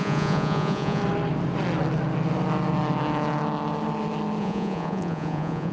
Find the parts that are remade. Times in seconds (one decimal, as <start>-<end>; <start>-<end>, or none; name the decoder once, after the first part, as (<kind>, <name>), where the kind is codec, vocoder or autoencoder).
0.0-1.0 (vocoder, Vocos); 4.4-5.7